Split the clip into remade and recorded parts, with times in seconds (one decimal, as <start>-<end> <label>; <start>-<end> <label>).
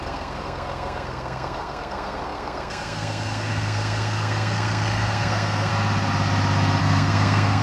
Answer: 0.0-5.7 remade; 5.7-6.8 recorded; 6.8-7.6 remade